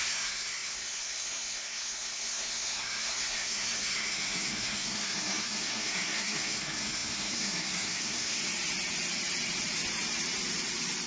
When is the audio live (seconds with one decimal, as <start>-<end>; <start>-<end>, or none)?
8.4-11.1

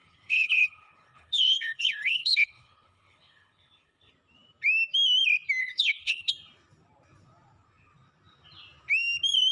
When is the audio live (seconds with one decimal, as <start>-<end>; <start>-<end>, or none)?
4.1-5.6; 6.3-9.5

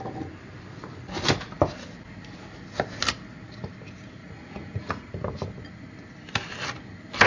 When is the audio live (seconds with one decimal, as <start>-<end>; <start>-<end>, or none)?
0.0-4.2; 5.1-7.3

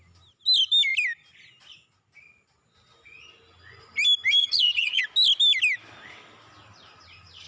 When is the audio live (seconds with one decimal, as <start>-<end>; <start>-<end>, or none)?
0.0-4.4; 5.0-7.5

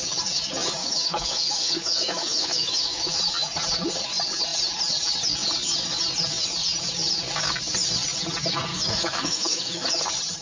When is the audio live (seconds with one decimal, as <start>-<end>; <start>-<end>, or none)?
0.0-0.8; 3.2-8.7; 10.0-10.4

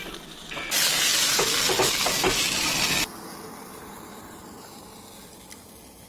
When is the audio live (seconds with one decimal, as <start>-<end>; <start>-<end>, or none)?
0.0-6.1

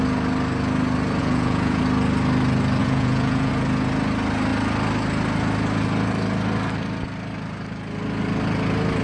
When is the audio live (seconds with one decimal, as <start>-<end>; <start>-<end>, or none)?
0.0-1.2; 1.8-2.8; 3.5-9.0

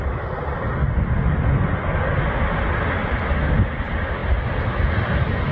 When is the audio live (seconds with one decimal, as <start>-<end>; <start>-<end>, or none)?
0.5-3.7; 4.2-4.9